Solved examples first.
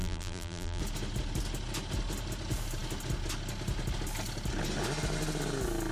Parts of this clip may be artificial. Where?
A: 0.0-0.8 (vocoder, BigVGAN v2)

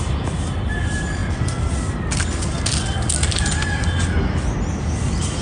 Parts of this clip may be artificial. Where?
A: none

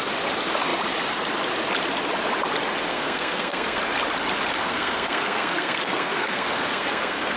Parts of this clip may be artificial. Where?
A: 2.9-3.8 (codec, SNAC); 4.6-7.4

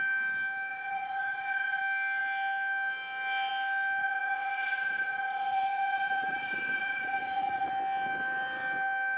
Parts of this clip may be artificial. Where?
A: 0.7-1.8 (vocoder, Vocos); 4.0-7.7

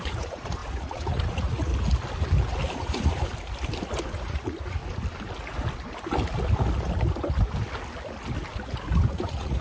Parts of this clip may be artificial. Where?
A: 0.0-1.7 (vocoder, Vocos); 2.7-3.2; 4.0-4.8; 9.1-9.6

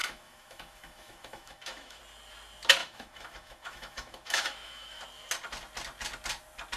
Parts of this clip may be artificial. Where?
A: 0.0-2.0 (autoencoder, DAC-VAE); 2.8-5.0

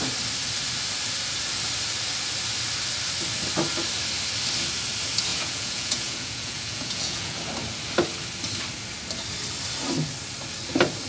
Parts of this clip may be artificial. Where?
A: 5.3-7.4 (vocoder, Vocos)

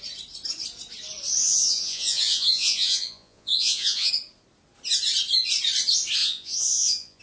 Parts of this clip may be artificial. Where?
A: 1.4-4.1 (vocoder, Vocos); 6.2-7.2